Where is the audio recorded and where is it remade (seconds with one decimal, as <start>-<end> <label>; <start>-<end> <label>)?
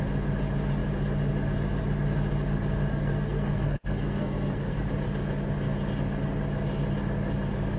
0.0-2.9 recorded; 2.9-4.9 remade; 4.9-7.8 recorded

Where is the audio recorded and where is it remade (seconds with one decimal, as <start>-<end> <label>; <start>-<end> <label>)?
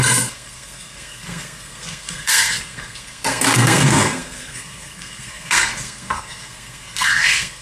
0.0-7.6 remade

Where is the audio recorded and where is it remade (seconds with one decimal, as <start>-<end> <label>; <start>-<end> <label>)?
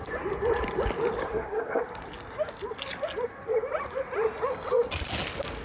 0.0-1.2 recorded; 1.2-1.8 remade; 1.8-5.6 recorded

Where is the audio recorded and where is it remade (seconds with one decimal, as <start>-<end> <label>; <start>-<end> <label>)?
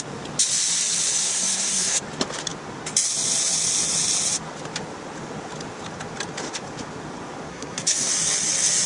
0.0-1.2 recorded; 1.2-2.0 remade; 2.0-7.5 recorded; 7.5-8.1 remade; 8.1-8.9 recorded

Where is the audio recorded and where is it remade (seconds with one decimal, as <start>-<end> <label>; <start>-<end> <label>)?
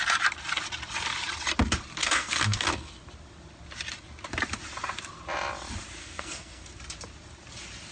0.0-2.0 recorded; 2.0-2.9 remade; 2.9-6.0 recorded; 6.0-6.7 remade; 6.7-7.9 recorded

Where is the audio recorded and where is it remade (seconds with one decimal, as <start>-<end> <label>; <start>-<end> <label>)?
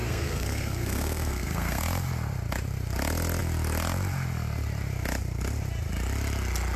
0.0-1.8 remade; 1.8-6.8 recorded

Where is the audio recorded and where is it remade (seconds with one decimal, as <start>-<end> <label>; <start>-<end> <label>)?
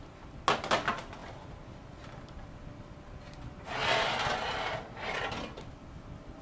0.0-6.4 recorded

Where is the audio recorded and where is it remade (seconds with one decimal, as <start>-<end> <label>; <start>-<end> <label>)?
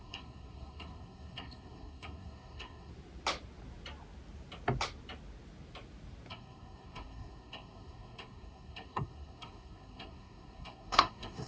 0.0-2.9 remade; 2.9-6.3 recorded; 6.3-11.5 remade